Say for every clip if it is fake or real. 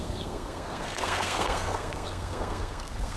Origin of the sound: fake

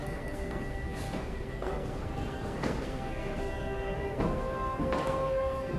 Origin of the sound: fake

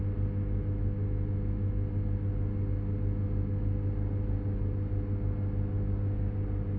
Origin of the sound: real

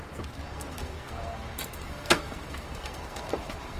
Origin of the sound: fake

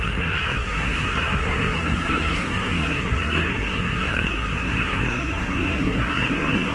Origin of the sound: fake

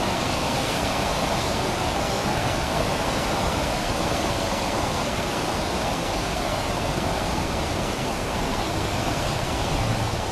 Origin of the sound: fake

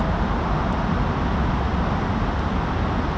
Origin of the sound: real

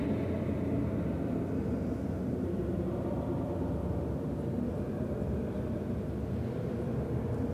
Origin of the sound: real